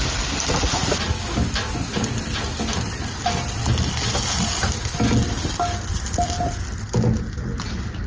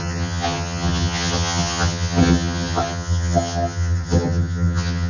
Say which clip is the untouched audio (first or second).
first